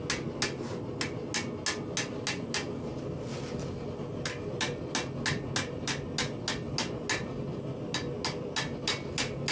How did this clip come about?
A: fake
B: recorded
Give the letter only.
B